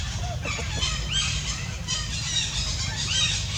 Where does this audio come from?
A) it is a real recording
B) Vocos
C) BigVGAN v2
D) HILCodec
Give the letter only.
C